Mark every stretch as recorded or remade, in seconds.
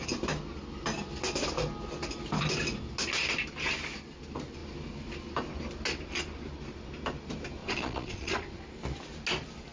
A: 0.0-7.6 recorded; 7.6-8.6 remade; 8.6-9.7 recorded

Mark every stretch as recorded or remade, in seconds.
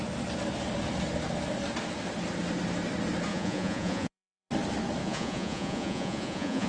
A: 0.0-3.3 recorded; 3.3-4.5 remade; 4.5-5.0 recorded; 5.0-6.7 remade